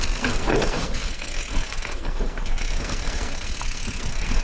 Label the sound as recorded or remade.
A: remade